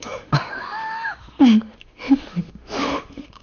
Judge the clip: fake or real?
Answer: fake